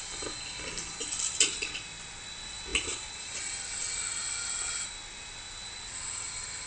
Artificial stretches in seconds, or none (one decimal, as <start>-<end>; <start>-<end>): none